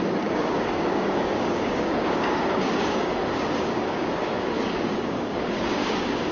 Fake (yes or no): yes